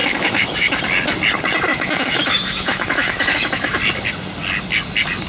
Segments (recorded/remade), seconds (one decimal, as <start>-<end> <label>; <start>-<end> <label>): 0.0-0.8 remade; 0.8-1.7 recorded; 1.7-3.8 remade; 3.8-5.3 recorded